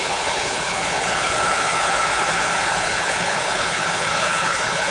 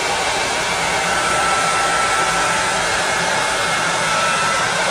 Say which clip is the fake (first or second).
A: first